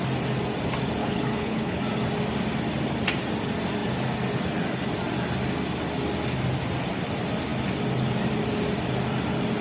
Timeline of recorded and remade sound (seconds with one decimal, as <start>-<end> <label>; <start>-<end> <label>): 0.0-1.0 recorded; 1.0-1.8 remade; 1.8-9.6 recorded